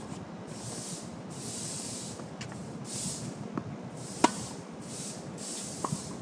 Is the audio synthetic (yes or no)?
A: yes